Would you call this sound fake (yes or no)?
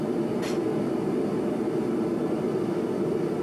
no